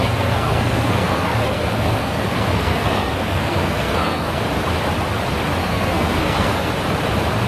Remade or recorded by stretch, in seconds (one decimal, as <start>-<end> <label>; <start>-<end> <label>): 0.0-4.4 remade; 4.4-5.6 recorded; 5.6-6.7 remade; 6.7-7.5 recorded